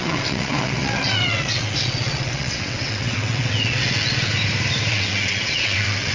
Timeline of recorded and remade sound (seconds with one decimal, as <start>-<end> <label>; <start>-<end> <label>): 0.0-4.3 remade; 4.3-4.9 recorded; 4.9-6.1 remade